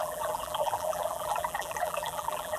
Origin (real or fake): fake